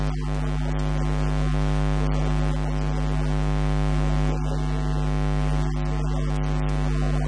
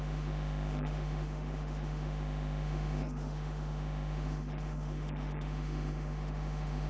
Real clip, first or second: first